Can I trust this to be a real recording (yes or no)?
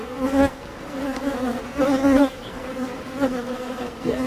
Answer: no